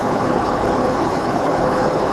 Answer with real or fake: fake